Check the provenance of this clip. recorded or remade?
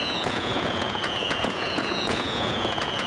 remade